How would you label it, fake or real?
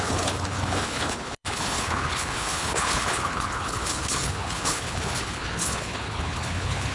fake